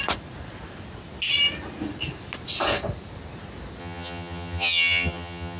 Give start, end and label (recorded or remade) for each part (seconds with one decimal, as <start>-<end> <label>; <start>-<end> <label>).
0.0-3.8 recorded; 3.8-5.6 remade